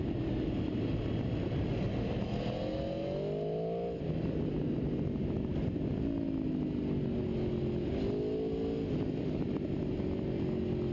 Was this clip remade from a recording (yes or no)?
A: no